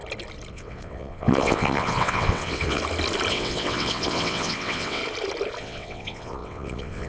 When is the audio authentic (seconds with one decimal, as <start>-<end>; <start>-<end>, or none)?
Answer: 0.0-0.5; 2.8-3.3; 5.0-5.6